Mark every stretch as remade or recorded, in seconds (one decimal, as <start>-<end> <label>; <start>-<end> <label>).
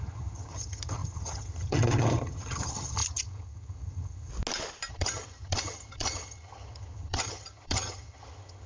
0.0-4.3 remade; 4.3-4.9 recorded; 4.9-8.7 remade